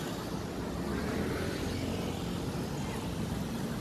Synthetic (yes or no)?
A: no